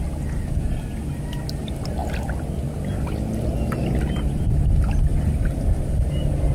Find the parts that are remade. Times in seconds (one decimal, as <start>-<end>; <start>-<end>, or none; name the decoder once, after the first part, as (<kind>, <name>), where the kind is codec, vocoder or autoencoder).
none